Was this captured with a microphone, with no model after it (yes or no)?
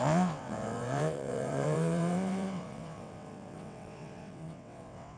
no